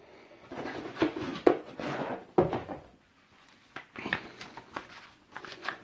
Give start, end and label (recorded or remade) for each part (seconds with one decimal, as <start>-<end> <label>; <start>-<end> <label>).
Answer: 0.0-5.8 remade